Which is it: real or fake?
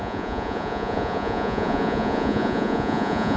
fake